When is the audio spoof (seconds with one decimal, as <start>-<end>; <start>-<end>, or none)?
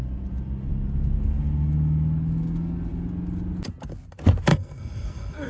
4.5-5.5